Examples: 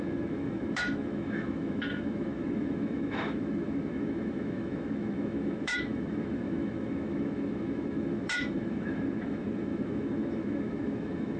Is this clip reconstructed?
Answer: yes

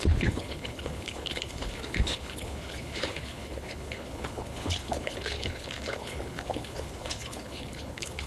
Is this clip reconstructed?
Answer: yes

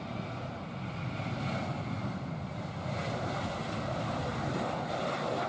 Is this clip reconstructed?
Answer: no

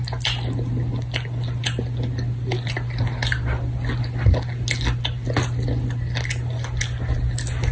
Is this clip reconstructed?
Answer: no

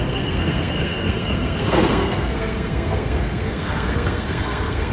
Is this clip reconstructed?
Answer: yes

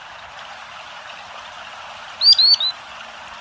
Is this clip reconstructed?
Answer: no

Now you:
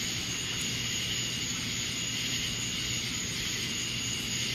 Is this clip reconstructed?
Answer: no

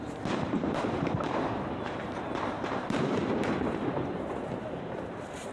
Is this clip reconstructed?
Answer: yes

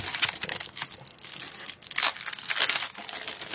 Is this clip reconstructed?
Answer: no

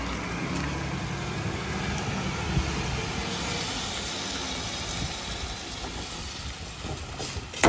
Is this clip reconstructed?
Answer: no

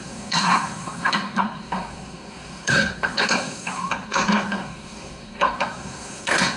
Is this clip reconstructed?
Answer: yes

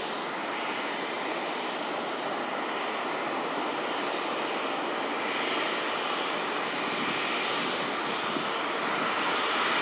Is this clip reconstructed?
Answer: no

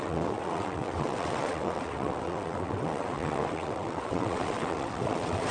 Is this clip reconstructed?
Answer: yes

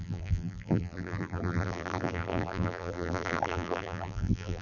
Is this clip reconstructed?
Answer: yes